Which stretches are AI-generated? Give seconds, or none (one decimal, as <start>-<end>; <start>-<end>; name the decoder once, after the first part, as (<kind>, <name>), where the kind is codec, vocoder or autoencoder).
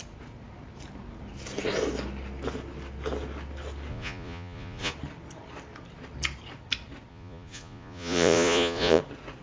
3.9-4.9 (vocoder, Vocos); 7.1-9.0